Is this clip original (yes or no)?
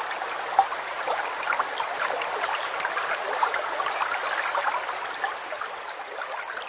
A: yes